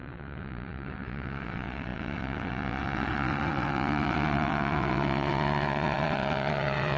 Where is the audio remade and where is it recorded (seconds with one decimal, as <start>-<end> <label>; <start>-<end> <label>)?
0.0-7.0 remade